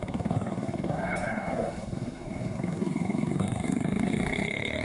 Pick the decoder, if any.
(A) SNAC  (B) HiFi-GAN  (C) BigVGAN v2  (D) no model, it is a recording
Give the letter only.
A